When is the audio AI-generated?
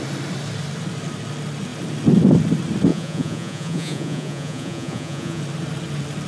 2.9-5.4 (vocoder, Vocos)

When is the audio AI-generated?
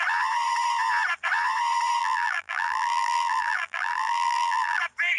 2.0-4.8 (vocoder, BigVGAN v2)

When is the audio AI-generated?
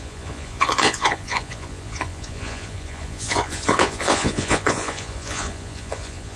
0.0-6.4 (vocoder, Vocos)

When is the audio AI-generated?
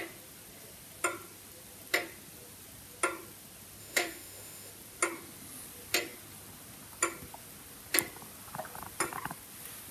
3.8-4.7 (autoencoder, DAC-VAE)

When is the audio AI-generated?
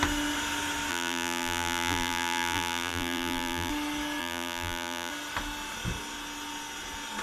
0.9-3.7 (vocoder, BigVGAN v2); 4.2-5.1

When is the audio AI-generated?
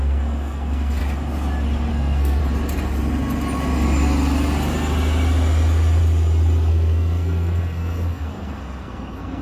0.0-1.0 (codec, SNAC); 1.9-2.4; 6.7-9.4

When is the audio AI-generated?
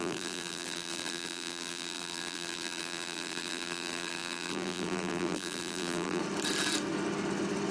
0.0-6.2 (vocoder, BigVGAN v2)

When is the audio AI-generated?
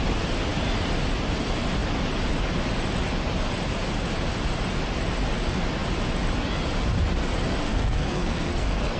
7.6-9.0 (codec, SNAC)